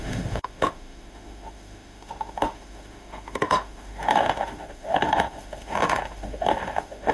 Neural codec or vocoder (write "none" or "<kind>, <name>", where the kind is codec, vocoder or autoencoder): autoencoder, DAC-VAE